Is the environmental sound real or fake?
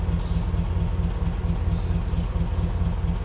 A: real